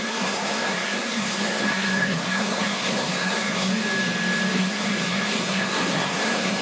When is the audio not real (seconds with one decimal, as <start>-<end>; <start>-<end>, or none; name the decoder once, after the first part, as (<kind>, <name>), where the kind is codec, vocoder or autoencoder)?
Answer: 0.0-3.7 (codec, SNAC); 4.6-6.6